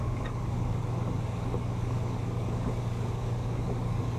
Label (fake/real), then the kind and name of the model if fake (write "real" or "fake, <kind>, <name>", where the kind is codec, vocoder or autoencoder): fake, codec, DAC